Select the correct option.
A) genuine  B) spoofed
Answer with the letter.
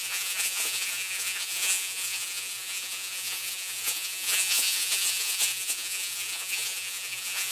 B